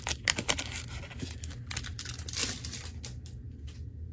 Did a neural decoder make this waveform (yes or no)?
no